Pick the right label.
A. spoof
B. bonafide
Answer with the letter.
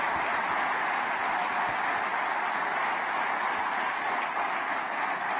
B